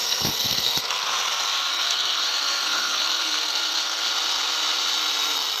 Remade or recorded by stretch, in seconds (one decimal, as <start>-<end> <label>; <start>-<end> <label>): 0.0-1.0 remade; 1.0-1.7 recorded; 1.7-4.1 remade; 4.1-5.6 recorded